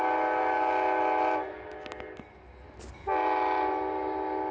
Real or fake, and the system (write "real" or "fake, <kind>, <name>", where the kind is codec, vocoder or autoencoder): real